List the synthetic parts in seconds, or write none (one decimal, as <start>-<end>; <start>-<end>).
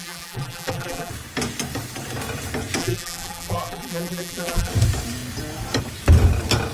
0.0-1.1; 2.8-4.7